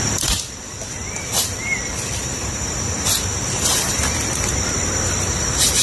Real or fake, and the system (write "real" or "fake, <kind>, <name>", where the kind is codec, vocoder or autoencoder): fake, vocoder, BigVGAN v2